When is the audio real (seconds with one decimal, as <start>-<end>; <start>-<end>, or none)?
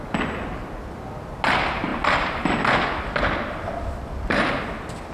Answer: 0.0-5.1